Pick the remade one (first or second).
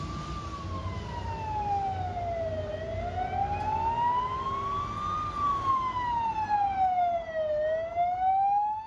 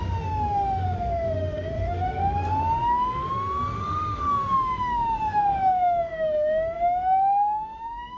second